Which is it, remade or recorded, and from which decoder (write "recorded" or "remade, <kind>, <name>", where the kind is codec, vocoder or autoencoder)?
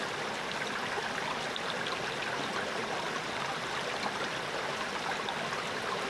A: recorded